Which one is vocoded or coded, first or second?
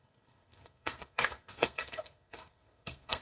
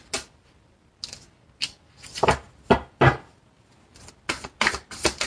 first